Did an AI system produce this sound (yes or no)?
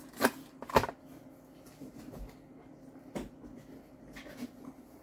no